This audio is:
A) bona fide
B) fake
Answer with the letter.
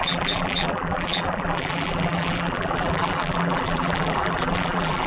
B